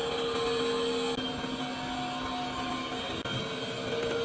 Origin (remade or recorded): recorded